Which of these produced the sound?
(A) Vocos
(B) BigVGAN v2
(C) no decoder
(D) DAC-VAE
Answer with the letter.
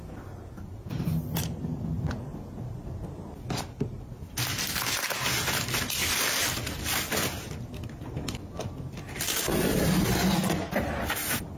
C